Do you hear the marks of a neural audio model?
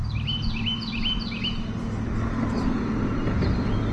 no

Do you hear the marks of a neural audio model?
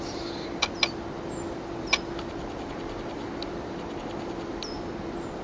no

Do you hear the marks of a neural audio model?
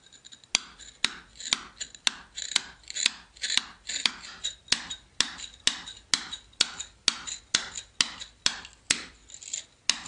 no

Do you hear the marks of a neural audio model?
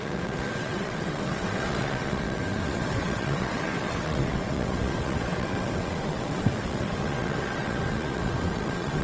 yes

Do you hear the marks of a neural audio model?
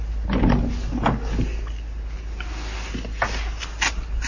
no